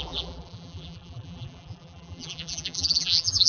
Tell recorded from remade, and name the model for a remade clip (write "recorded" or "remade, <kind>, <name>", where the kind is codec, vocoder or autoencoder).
remade, vocoder, BigVGAN v2